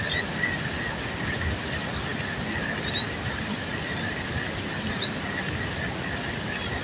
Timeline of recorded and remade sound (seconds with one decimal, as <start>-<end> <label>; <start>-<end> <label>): 0.0-6.8 recorded